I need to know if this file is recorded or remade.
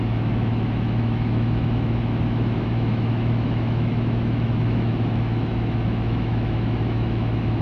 remade